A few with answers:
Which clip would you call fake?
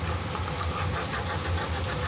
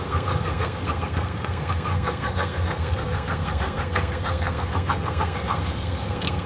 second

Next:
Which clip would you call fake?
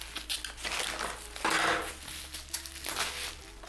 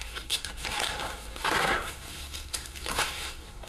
second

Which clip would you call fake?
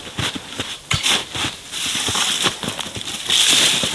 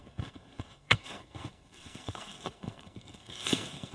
second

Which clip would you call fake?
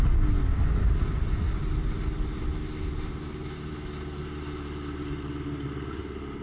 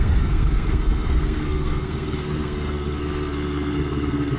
second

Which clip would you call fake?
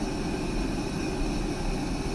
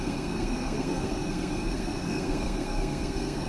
second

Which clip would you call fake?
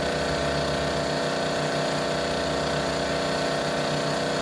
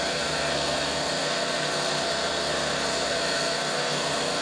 second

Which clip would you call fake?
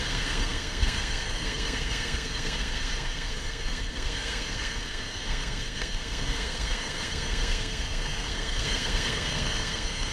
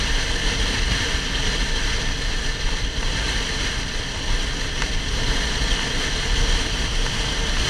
first